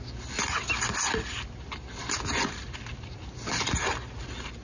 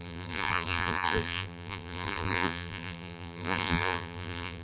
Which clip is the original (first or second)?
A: first